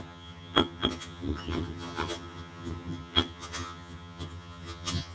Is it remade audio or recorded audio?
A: remade